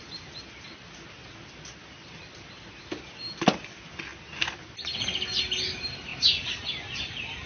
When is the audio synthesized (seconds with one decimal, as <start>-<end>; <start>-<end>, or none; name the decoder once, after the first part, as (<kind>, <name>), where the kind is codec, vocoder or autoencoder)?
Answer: none